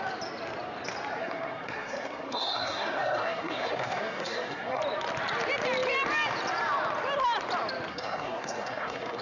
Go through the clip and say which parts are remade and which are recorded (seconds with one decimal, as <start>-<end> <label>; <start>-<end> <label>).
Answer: 0.0-1.2 recorded; 1.2-4.8 remade; 4.8-7.9 recorded; 7.9-9.2 remade